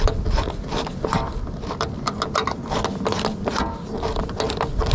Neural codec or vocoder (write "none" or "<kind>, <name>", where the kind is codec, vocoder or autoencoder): none